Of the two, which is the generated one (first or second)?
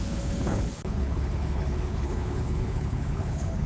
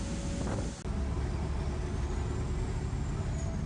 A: first